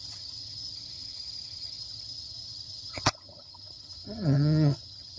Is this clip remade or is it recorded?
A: remade